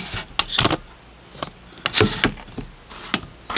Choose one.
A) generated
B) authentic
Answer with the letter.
B